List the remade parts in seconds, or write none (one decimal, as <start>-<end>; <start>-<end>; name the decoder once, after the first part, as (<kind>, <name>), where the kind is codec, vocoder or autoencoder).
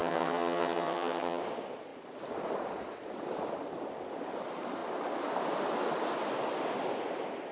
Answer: 0.0-1.4 (vocoder, HiFi-GAN)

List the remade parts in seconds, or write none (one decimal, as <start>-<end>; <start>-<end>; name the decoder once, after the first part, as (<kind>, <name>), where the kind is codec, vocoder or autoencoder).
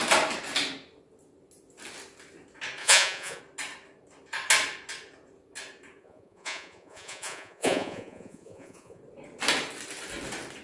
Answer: 2.8-3.4 (vocoder, Vocos); 6.0-9.0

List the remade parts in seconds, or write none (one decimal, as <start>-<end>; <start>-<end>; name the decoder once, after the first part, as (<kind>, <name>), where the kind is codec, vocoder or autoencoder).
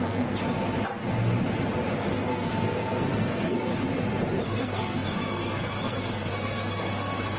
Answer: 0.0-0.4 (codec, SNAC); 2.1-3.7; 4.4-7.4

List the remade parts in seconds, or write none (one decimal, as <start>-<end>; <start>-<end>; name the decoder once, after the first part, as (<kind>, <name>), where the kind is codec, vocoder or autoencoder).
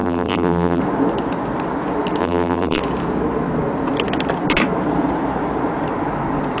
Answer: 0.0-0.8 (vocoder, BigVGAN v2); 2.2-2.8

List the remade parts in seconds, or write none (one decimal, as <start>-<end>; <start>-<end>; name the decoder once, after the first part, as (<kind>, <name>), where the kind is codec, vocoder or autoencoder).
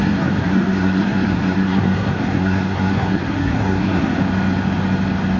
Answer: 0.0-4.2 (codec, SNAC)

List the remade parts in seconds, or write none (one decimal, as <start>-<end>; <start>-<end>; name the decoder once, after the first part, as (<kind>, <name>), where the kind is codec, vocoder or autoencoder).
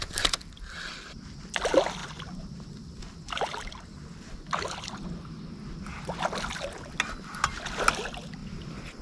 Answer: 2.0-3.0 (vocoder, BigVGAN v2); 8.4-9.0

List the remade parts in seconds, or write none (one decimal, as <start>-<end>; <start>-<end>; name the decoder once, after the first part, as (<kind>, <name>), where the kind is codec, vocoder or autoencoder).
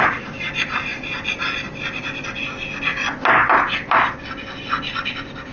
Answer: none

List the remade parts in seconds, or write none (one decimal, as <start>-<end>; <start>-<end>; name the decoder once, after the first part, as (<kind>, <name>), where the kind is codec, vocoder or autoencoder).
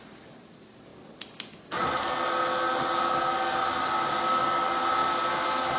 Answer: none